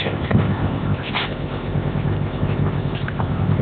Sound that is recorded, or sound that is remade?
remade